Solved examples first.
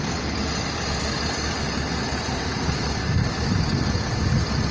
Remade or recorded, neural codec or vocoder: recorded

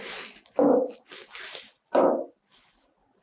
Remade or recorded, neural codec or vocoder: recorded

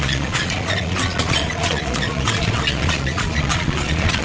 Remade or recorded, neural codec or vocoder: remade, vocoder, Vocos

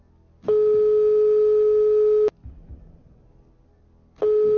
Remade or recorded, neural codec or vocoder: recorded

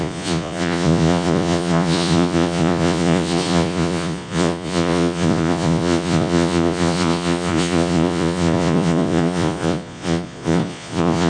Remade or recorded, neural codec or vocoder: remade, vocoder, Vocos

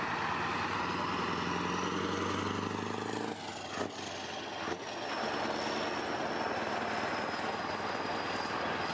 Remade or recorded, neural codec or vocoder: recorded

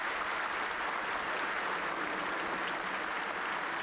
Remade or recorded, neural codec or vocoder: recorded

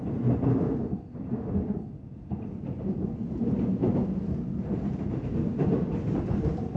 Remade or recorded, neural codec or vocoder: recorded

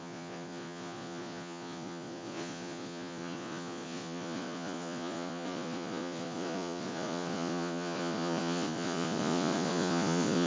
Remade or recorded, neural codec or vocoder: remade, vocoder, Vocos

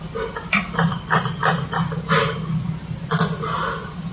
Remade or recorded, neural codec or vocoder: recorded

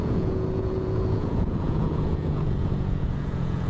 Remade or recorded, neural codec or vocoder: remade, vocoder, Vocos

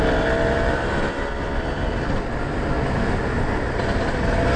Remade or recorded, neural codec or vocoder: recorded